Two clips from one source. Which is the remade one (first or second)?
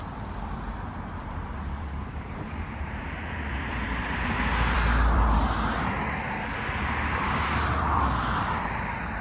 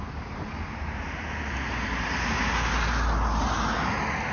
first